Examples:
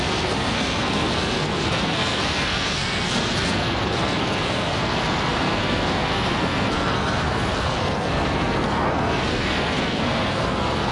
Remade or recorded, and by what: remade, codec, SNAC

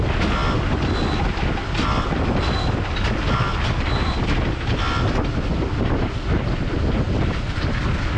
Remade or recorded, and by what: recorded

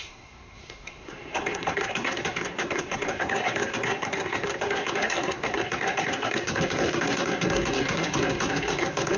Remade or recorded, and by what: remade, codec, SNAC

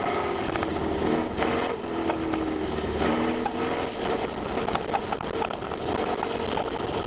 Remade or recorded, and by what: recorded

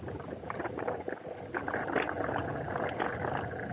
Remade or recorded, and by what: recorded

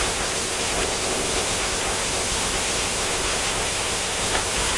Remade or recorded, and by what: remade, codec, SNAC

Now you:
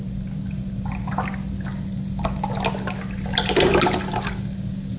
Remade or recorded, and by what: recorded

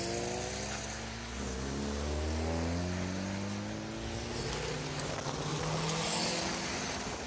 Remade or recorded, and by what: recorded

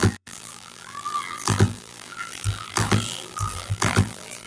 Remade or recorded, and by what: remade, vocoder, BigVGAN v2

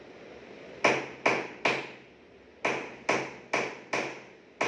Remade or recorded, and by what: recorded